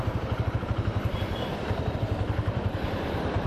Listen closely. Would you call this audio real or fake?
fake